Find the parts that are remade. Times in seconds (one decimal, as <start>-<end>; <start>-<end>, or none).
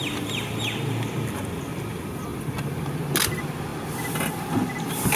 none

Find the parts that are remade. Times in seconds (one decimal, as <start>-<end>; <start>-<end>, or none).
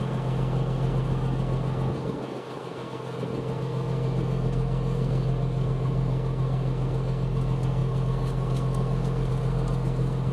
0.0-10.3